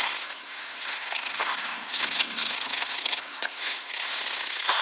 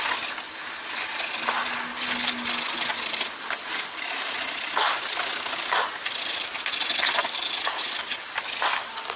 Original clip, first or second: second